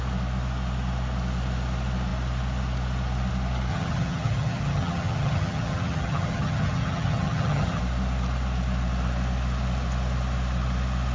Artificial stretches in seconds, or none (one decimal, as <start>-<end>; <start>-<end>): 3.7-7.8